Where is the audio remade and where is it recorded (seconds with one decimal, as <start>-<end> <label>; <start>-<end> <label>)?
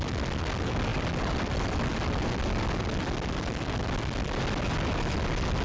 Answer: 0.0-5.6 recorded